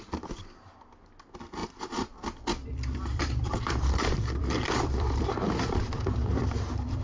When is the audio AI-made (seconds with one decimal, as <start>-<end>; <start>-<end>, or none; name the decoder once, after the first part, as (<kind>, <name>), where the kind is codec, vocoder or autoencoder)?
1.6-2.2 (vocoder, BigVGAN v2); 2.6-6.1